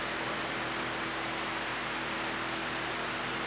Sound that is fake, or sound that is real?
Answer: real